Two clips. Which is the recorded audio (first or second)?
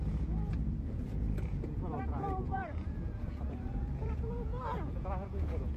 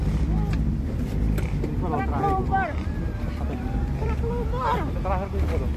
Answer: second